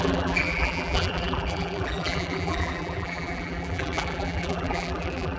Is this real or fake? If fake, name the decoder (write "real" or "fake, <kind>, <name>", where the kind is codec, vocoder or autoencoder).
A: fake, vocoder, BigVGAN v2